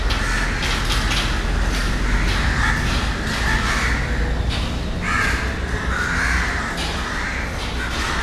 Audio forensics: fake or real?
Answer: real